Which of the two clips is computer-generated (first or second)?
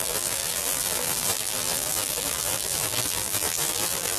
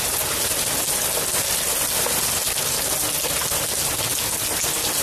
first